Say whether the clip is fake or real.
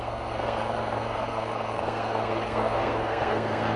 fake